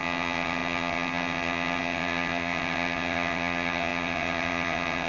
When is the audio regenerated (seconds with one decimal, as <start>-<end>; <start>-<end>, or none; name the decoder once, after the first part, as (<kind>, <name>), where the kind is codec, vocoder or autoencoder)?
0.0-5.1 (vocoder, HiFi-GAN)